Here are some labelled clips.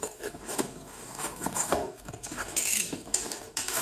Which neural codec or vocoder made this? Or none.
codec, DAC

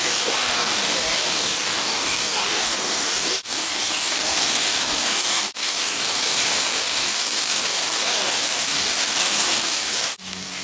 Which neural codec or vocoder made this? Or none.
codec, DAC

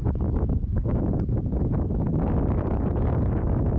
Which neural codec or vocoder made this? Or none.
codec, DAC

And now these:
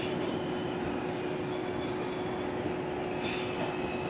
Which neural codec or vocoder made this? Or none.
none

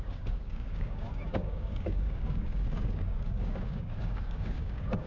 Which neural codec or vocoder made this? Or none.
codec, DAC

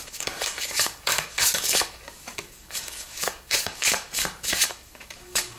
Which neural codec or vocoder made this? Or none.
codec, DAC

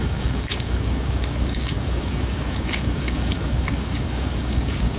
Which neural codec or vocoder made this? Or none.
codec, DAC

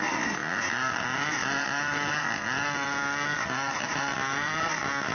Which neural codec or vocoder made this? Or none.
none